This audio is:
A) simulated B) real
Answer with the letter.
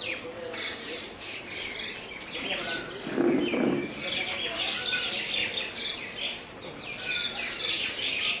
B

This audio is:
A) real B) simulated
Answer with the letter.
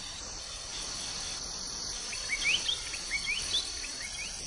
A